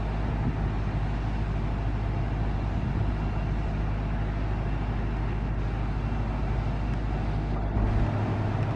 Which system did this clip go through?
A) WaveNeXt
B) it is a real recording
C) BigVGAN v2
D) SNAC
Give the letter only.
B